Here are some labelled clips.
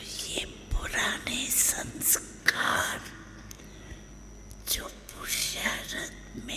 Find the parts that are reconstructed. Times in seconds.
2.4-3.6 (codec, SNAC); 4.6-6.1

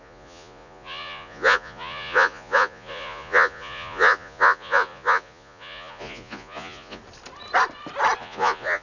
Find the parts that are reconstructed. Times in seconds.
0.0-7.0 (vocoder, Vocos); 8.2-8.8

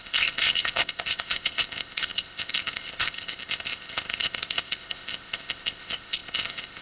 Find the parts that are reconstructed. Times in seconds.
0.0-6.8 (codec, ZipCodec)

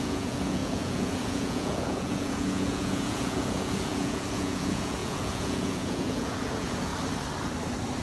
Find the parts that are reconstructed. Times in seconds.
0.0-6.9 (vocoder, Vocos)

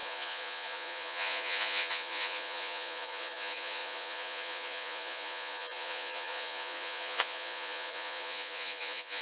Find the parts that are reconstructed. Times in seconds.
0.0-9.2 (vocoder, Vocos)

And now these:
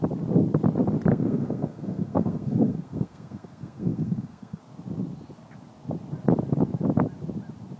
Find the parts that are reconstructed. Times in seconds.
1.1-4.6 (codec, SNAC)

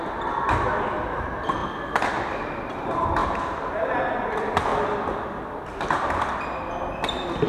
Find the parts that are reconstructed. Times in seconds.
4.7-6.7 (vocoder, BigVGAN v2)